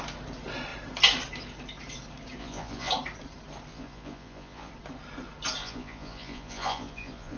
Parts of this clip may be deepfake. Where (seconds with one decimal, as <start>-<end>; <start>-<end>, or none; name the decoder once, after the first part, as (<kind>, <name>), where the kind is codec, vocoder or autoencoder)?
2.4-2.9 (vocoder, Vocos); 3.7-4.7; 5.6-7.4